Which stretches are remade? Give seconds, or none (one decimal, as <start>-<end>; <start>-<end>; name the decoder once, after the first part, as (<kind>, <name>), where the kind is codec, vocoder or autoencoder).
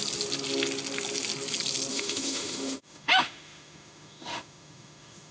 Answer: 1.9-5.3 (autoencoder, DAC-VAE)